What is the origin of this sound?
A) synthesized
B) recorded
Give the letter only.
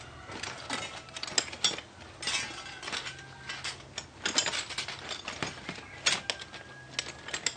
B